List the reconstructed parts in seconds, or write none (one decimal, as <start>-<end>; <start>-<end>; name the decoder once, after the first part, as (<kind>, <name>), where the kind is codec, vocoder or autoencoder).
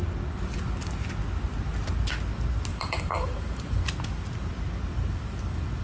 2.7-3.8 (vocoder, BigVGAN v2)